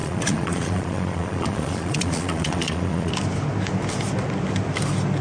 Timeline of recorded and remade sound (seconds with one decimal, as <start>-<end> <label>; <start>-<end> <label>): 0.0-3.1 remade; 3.1-5.2 recorded

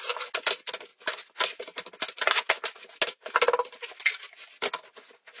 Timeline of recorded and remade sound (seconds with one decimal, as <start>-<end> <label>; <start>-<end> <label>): 0.0-5.4 recorded

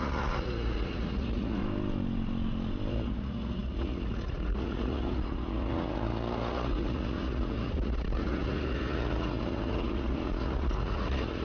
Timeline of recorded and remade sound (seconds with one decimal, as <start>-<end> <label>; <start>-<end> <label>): 0.0-1.6 remade; 1.6-2.9 recorded; 2.9-11.4 remade

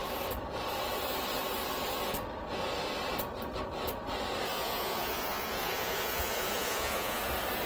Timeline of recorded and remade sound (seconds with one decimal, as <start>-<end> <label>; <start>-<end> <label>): 0.0-4.5 recorded; 4.5-7.2 remade; 7.2-7.7 recorded

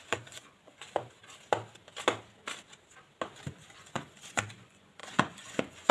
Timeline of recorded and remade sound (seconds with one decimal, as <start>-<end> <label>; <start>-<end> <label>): 0.0-1.2 remade; 1.2-3.5 recorded; 3.5-5.9 remade

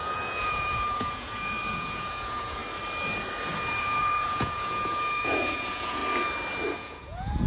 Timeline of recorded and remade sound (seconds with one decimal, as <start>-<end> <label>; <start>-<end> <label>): 0.0-2.6 remade; 2.6-3.8 recorded; 3.8-6.0 remade; 6.0-6.7 recorded; 6.7-7.5 remade

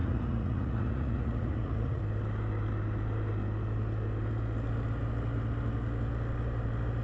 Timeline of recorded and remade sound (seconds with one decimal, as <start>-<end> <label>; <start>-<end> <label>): 0.0-2.0 remade; 2.0-7.0 recorded